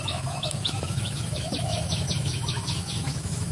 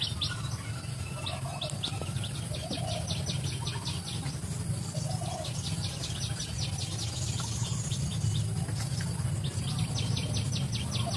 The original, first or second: second